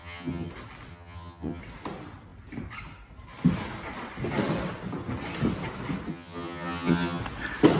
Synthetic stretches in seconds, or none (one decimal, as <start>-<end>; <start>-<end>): 0.0-0.5; 0.9-1.6; 6.1-7.2